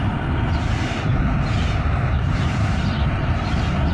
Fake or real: fake